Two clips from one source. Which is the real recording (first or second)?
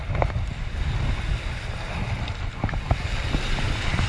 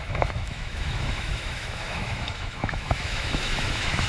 first